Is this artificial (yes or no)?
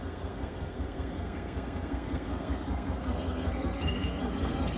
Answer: yes